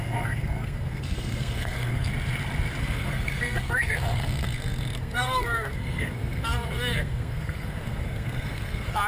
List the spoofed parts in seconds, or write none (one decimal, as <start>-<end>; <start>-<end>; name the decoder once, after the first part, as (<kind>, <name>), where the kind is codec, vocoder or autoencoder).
0.0-2.1 (codec, SNAC); 2.8-9.1

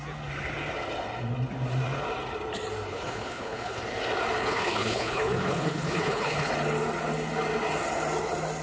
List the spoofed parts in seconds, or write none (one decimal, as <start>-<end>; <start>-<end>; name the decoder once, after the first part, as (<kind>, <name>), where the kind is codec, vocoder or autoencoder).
2.9-3.8 (codec, HILCodec); 4.4-6.5

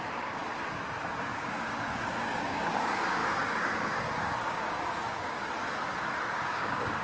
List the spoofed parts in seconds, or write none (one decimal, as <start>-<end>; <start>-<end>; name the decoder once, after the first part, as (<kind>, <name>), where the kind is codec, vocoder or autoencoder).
0.0-0.4 (codec, DAC); 1.2-5.4; 6.3-7.0

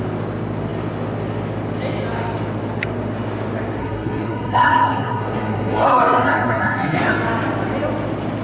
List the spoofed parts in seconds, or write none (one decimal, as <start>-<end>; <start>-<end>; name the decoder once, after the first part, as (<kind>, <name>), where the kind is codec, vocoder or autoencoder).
3.8-7.0 (codec, SNAC)

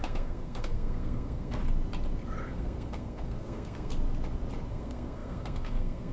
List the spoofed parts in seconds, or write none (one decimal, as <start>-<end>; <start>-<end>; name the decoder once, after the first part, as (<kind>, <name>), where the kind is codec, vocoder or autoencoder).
0.0-1.6 (codec, SNAC); 2.4-3.9; 4.7-6.1

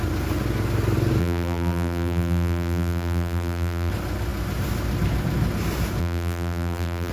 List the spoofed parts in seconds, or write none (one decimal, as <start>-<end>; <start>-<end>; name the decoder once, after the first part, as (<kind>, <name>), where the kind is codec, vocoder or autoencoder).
1.2-3.9 (vocoder, BigVGAN v2); 6.0-7.1